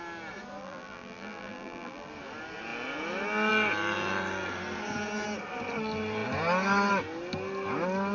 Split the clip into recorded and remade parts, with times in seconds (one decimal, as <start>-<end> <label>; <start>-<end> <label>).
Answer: 0.0-0.6 recorded; 0.6-2.1 remade; 2.1-8.1 recorded

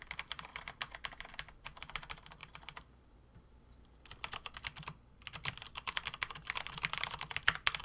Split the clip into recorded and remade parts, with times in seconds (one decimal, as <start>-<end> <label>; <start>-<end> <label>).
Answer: 0.0-3.5 remade; 3.5-7.8 recorded